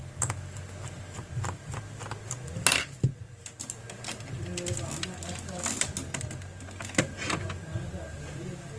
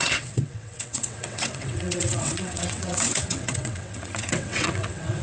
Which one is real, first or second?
first